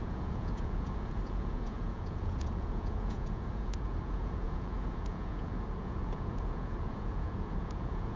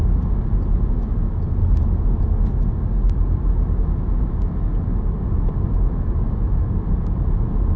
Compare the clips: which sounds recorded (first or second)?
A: second